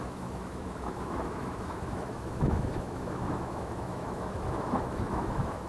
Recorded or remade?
remade